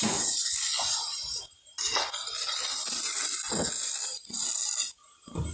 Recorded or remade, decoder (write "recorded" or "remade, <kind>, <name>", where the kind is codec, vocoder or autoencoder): recorded